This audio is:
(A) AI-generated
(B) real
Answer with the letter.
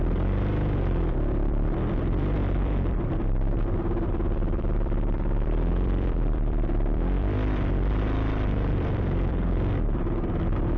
A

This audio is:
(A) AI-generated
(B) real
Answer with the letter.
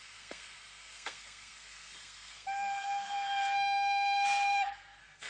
A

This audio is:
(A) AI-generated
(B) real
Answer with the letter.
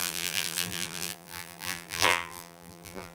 A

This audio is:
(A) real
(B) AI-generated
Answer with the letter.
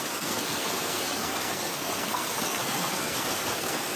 B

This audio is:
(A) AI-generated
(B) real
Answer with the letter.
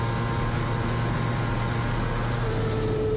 B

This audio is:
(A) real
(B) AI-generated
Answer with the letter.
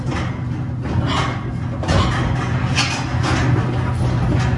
A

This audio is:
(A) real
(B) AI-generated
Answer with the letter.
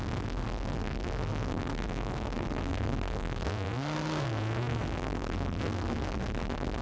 B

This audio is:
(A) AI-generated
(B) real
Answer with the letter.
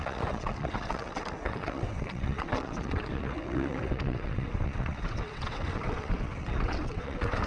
A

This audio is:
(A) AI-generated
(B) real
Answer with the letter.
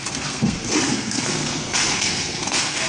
A